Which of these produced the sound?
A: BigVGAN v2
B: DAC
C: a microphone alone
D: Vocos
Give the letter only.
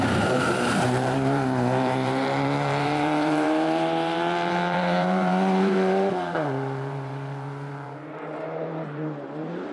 A